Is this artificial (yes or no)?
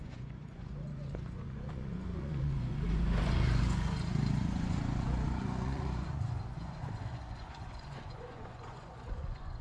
yes